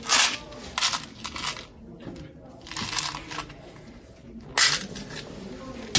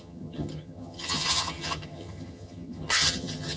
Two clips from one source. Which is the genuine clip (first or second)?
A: first